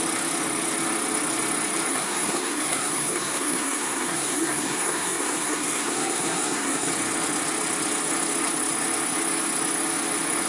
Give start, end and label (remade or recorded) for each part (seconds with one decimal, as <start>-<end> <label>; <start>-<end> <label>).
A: 0.0-1.9 recorded; 1.9-6.9 remade; 6.9-10.5 recorded

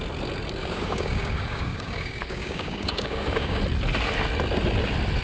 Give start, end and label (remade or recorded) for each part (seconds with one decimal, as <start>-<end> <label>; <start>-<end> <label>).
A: 0.0-0.6 recorded; 0.6-3.6 remade; 3.6-5.2 recorded